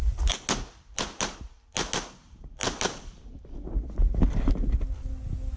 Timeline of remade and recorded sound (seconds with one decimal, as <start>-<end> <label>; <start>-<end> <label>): 0.0-5.6 recorded